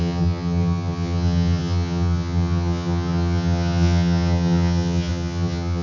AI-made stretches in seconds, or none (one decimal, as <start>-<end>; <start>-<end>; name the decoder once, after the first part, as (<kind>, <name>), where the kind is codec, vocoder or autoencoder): 0.0-5.8 (vocoder, HiFi-GAN)